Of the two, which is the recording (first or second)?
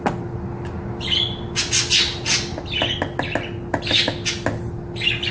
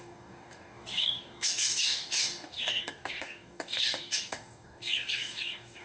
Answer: first